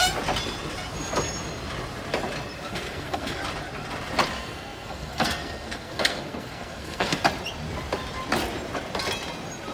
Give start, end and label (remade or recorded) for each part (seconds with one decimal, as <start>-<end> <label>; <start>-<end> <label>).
0.0-2.7 recorded; 2.7-3.4 remade; 3.4-4.4 recorded; 4.4-7.2 remade; 7.2-9.7 recorded